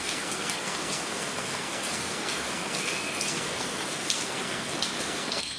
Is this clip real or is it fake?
fake